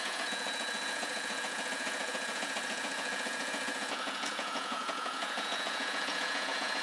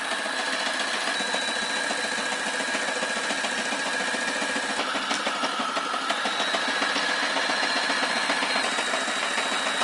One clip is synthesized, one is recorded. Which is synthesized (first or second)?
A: first